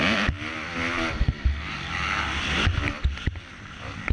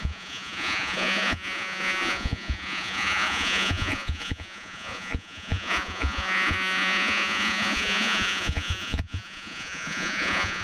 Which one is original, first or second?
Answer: first